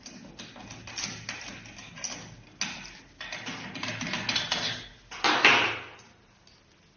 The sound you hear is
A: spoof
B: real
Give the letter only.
B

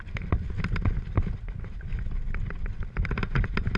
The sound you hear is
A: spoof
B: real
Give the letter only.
B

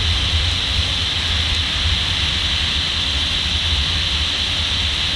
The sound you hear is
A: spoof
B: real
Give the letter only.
B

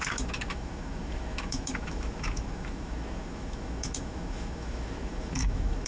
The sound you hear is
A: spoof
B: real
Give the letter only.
A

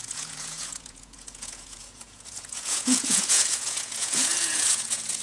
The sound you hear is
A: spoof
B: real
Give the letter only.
A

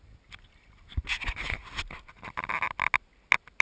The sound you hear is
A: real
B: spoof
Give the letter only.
A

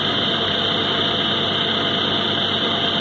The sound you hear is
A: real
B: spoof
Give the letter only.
A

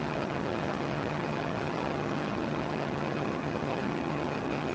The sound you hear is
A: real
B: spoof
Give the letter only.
B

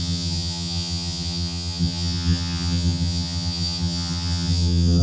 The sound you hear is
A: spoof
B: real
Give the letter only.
A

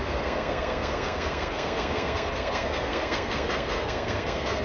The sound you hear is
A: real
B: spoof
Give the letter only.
B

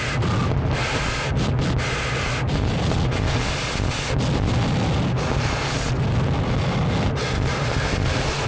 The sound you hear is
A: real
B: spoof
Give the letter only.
A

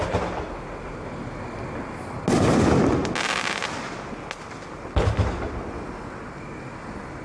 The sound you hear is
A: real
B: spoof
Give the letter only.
A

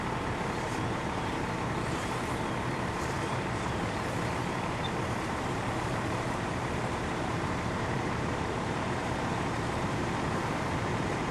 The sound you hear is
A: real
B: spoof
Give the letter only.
B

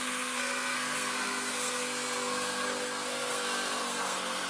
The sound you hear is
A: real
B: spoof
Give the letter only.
B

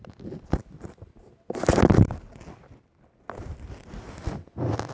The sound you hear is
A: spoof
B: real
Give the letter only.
B